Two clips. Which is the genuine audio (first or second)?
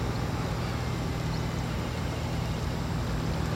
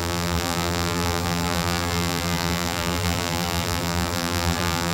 first